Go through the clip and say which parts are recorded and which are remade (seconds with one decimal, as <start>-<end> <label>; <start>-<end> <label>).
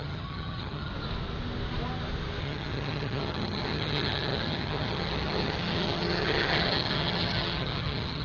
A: 0.0-0.9 remade; 0.9-2.4 recorded; 2.4-8.2 remade